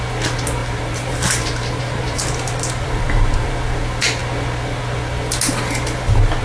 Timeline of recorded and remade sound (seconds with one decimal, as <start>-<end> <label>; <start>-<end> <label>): 0.0-0.6 recorded; 0.6-3.8 remade; 3.8-6.4 recorded